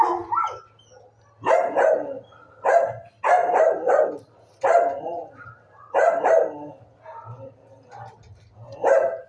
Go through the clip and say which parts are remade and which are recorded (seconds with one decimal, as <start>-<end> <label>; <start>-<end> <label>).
0.0-3.4 recorded; 3.4-7.0 remade; 7.0-9.3 recorded